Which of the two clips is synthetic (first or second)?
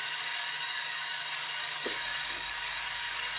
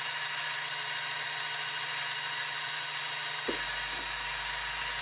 first